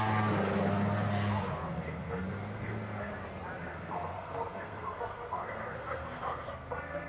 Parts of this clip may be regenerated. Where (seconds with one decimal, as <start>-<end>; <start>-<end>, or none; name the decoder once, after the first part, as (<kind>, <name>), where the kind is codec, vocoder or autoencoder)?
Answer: 1.7-3.1 (codec, SNAC); 3.7-7.1